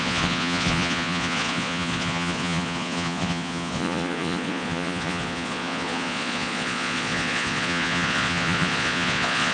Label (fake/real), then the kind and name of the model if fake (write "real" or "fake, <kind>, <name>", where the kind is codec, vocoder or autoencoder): fake, vocoder, Vocos